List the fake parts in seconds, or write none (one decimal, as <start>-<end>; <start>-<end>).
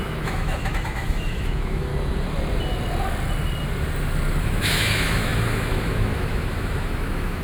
0.0-1.9; 4.4-7.4